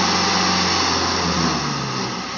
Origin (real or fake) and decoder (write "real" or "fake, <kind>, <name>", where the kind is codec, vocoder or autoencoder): real